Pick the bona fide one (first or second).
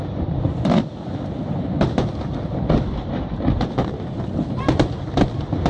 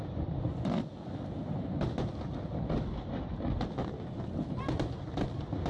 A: second